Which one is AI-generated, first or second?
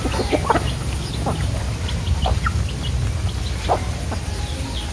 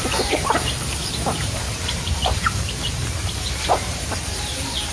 second